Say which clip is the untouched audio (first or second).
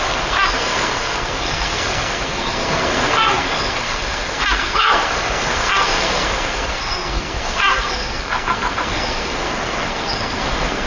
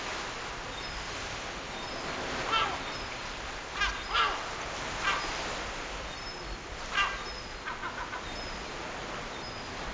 second